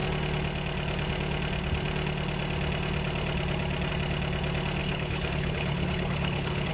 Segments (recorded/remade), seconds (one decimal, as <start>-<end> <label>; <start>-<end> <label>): 0.0-4.8 recorded; 4.8-6.7 remade